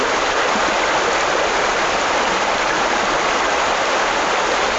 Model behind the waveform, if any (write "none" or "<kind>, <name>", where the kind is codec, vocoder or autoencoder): none